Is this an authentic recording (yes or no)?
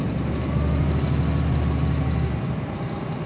yes